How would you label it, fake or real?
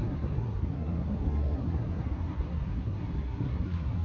fake